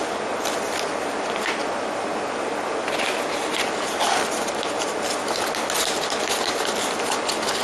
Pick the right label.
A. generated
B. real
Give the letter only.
B